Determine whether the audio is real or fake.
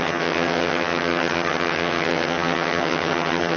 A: fake